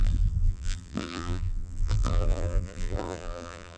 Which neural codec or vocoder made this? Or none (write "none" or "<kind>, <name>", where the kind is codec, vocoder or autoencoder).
vocoder, BigVGAN v2